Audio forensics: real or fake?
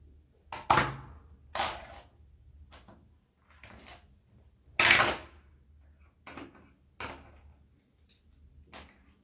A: real